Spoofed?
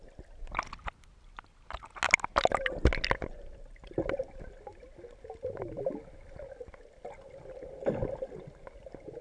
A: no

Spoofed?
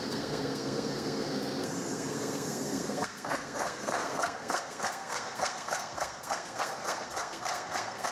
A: yes